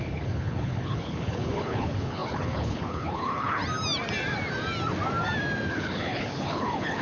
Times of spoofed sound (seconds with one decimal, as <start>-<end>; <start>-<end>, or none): 0.0-3.6; 5.7-7.0